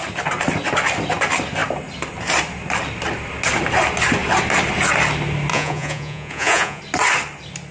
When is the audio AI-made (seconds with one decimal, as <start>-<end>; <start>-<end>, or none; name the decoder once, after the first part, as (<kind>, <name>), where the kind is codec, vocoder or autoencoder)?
5.5-6.8 (vocoder, Vocos)